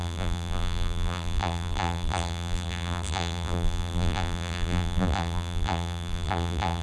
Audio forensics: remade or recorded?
remade